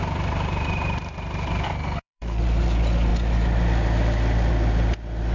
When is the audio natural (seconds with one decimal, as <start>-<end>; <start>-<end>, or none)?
0.0-1.7; 2.4-5.3